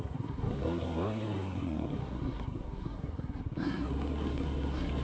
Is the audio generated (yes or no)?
yes